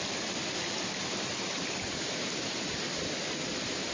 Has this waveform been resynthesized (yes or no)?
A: no